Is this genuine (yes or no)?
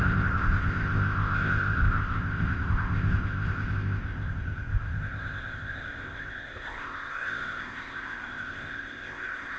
no